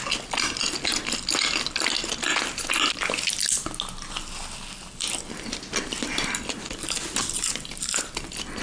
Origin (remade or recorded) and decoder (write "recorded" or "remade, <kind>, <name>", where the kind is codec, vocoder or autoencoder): recorded